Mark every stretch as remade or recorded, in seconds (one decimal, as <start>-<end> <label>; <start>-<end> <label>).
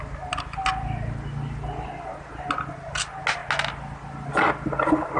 0.0-5.2 recorded